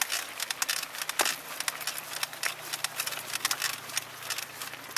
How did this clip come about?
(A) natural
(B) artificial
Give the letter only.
A